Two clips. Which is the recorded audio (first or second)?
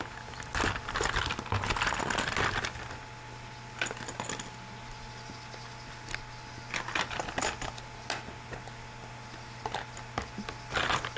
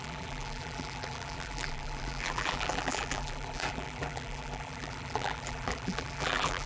first